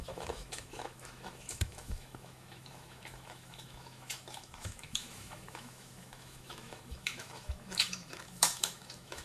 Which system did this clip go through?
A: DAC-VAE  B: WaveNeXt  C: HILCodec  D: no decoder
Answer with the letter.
A